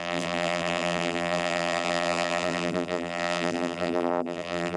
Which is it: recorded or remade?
remade